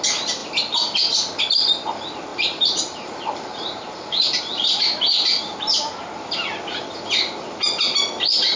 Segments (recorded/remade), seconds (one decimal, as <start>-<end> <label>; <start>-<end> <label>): 0.0-2.3 recorded; 2.3-5.0 remade; 5.0-8.6 recorded